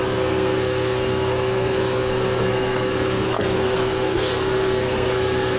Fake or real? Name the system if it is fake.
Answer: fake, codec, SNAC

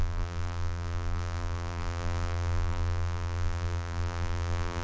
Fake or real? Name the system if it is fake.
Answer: fake, vocoder, BigVGAN v2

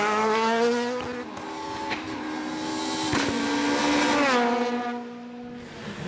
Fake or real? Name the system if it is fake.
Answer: real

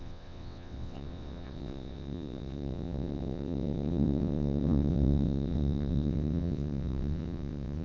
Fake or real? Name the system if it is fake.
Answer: fake, vocoder, WaveNeXt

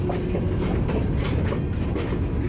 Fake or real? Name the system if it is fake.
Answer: real